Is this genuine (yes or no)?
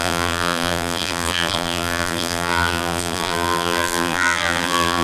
no